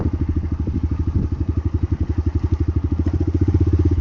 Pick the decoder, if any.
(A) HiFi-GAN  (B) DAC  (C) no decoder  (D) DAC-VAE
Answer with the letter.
C